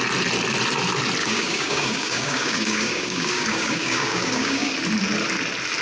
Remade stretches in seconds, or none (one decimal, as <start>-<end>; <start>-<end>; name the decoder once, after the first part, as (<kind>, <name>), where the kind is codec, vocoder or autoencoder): 1.2-4.7 (codec, DAC)